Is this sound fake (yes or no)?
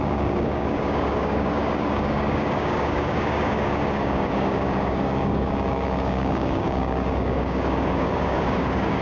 yes